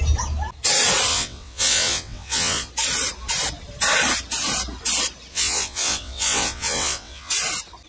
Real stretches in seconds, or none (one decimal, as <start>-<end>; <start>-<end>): 0.0-1.1; 2.7-5.3; 7.3-7.9